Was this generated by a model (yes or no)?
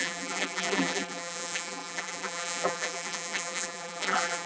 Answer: yes